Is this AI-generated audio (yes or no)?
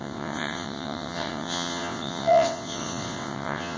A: yes